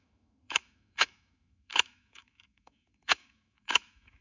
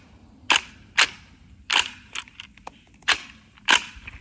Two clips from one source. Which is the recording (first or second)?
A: second